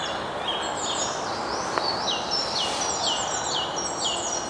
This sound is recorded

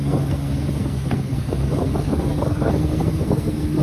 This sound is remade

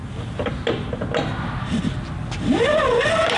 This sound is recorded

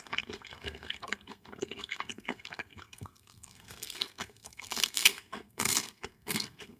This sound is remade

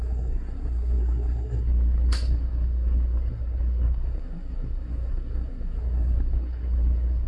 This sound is remade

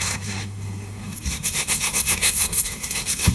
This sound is remade